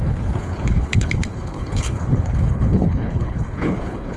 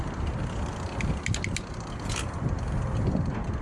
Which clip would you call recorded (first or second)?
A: second